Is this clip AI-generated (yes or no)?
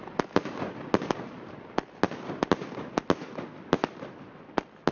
no